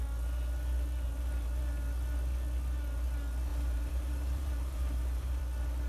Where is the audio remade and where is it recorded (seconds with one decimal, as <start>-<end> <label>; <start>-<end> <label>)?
0.0-3.5 recorded; 3.5-5.4 remade; 5.4-5.9 recorded